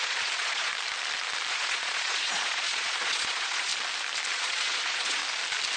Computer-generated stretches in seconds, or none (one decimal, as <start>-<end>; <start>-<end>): 0.0-0.7; 1.5-3.7; 4.3-5.2